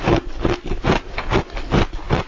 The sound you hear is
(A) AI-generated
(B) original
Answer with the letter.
B